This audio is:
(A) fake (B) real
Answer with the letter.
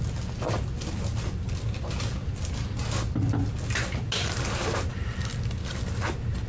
B